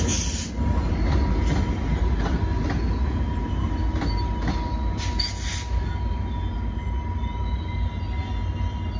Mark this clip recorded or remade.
recorded